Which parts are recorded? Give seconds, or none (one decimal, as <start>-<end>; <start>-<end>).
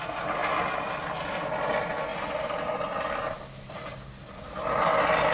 0.0-5.3